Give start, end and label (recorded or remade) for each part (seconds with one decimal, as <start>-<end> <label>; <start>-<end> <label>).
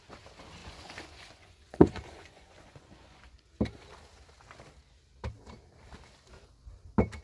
0.0-0.6 recorded; 0.6-3.5 remade; 3.5-7.2 recorded